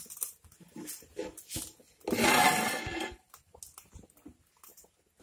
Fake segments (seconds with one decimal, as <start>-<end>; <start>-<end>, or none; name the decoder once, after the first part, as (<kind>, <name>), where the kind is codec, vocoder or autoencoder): 2.9-3.6 (vocoder, BigVGAN v2)